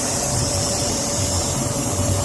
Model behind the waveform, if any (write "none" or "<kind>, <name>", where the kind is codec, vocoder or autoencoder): vocoder, BigVGAN v2